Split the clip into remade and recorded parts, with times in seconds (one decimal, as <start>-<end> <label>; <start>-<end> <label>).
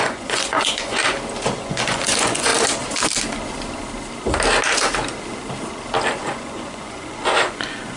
0.0-1.0 remade; 1.0-1.6 recorded; 1.6-2.5 remade; 2.5-6.2 recorded; 6.2-8.0 remade